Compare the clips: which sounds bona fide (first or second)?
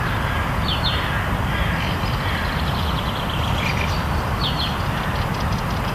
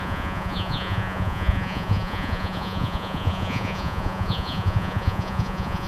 first